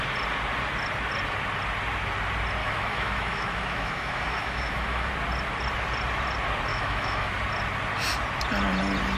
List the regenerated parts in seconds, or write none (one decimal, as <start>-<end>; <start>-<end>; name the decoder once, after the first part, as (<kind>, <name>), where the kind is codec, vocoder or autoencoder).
2.6-5.1 (autoencoder, DAC-VAE); 6.7-7.3

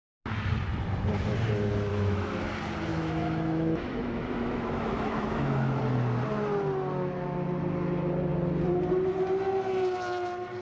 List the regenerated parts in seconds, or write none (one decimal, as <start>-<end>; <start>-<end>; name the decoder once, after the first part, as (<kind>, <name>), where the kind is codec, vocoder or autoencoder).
1.9-2.5 (autoencoder, DAC-VAE); 2.9-5.8

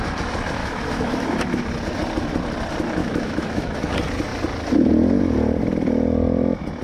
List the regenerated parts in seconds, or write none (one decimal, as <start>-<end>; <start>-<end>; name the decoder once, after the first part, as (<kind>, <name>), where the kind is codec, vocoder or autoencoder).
0.6-1.6 (autoencoder, DAC-VAE); 3.0-3.9

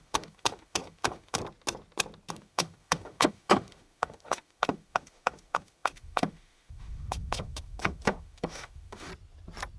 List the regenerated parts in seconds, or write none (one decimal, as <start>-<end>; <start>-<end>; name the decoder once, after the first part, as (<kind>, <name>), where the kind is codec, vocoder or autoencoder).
0.0-1.4 (autoencoder, DAC-VAE); 2.3-9.1

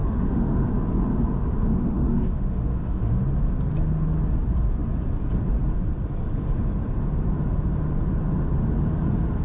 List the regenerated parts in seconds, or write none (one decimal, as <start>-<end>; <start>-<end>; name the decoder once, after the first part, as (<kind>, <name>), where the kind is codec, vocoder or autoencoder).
0.0-0.7 (autoencoder, DAC-VAE); 1.7-3.1

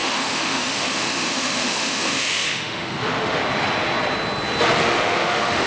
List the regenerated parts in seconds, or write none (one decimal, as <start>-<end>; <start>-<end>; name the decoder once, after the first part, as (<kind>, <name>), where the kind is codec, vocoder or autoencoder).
0.0-3.4 (autoencoder, DAC-VAE); 4.8-5.7

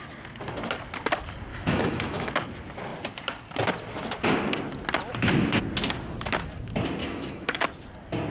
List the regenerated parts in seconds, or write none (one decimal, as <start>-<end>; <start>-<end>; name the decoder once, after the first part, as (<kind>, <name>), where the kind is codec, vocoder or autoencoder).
1.5-2.3 (autoencoder, DAC-VAE); 7.0-7.6

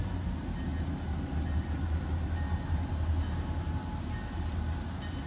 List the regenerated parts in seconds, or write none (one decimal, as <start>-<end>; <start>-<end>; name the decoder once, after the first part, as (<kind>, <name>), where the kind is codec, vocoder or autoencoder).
none